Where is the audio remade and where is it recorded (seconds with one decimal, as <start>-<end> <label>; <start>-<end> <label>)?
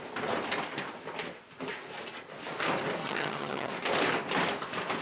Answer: 0.0-3.0 recorded; 3.0-3.7 remade; 3.7-5.0 recorded